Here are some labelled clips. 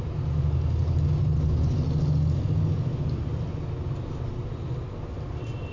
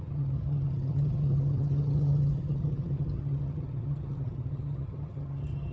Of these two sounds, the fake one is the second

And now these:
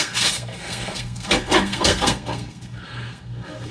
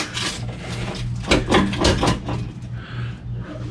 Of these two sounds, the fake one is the first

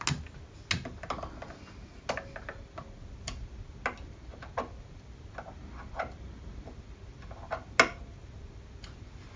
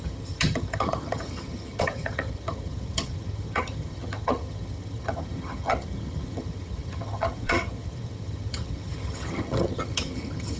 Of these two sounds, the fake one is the second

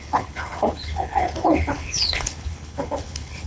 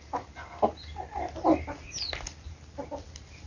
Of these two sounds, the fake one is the first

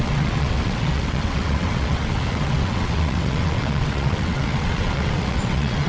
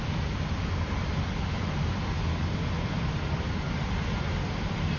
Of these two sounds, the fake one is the first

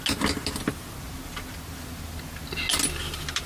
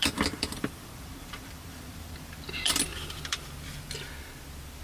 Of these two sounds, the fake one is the second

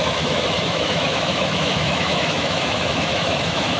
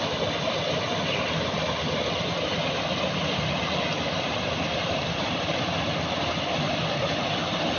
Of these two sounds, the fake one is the first